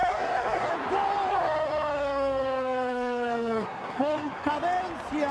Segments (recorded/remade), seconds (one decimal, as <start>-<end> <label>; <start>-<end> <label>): 0.0-0.7 remade; 0.7-1.3 recorded; 1.3-4.5 remade; 4.5-5.3 recorded